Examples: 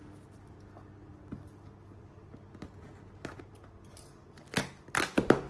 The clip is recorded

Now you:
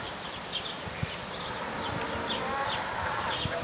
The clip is recorded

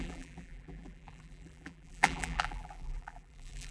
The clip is remade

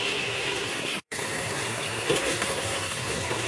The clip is remade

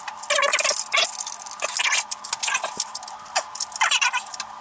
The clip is recorded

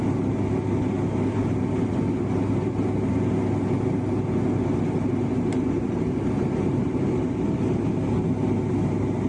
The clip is recorded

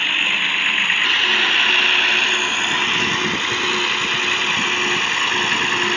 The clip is recorded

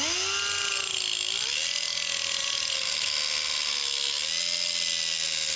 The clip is recorded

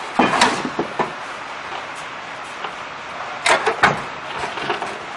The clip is recorded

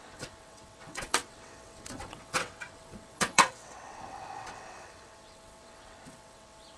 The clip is remade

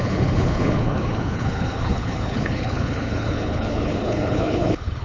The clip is remade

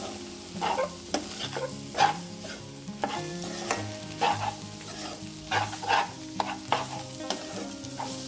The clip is recorded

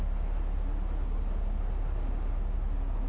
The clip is recorded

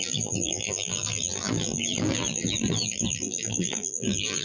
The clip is remade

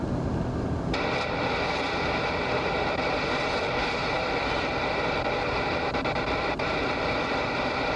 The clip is recorded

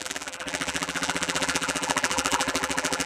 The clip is remade